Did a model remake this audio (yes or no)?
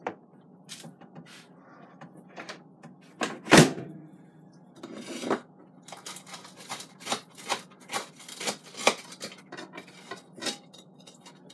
no